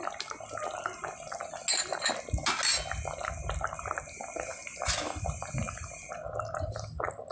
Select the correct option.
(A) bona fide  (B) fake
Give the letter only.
A